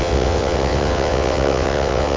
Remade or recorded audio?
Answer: remade